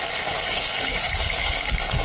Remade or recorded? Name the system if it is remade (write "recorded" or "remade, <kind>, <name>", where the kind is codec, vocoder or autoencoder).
remade, codec, DAC